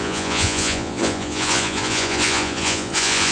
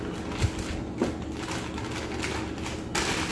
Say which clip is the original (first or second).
second